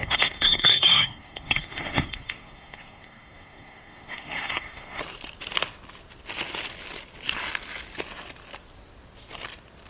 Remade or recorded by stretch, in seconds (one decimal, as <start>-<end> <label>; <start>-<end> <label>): 0.0-5.0 remade; 5.0-9.9 recorded